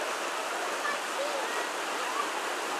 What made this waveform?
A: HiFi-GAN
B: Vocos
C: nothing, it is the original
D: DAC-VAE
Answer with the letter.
C